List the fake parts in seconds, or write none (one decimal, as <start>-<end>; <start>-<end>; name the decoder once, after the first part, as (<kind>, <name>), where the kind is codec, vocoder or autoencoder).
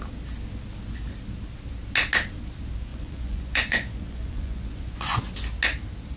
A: 2.9-5.2 (vocoder, Vocos)